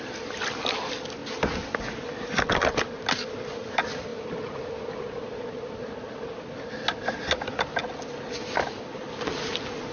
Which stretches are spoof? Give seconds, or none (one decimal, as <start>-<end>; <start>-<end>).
none